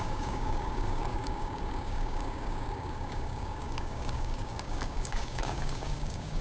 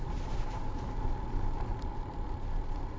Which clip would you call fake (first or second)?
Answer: first